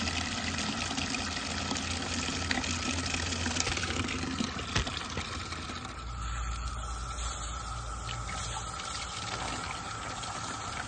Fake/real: real